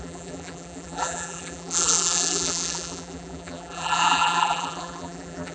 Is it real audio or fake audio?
fake